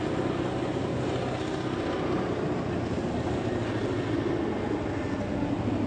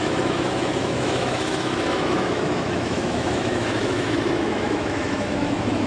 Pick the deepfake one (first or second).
second